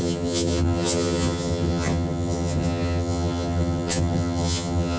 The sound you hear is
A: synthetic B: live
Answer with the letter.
A